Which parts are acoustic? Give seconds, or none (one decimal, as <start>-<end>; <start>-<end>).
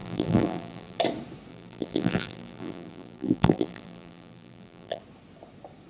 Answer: 1.0-1.5; 5.0-5.9